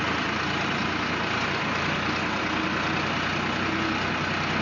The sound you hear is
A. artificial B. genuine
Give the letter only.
B